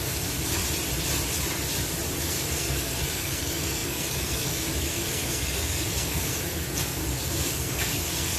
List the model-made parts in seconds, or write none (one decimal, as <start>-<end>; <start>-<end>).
0.0-0.6; 2.2-8.4